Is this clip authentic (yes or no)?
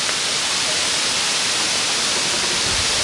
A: yes